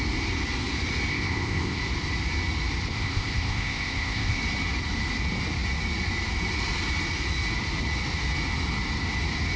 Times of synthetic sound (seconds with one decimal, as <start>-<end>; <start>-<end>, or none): 1.1-1.8; 2.9-4.4